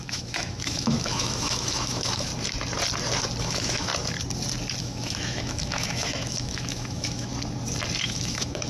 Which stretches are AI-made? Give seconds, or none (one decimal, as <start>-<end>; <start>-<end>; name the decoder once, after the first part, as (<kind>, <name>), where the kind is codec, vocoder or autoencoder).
0.0-2.3 (autoencoder, DAC-VAE); 3.4-3.9; 4.8-7.3; 8.0-8.7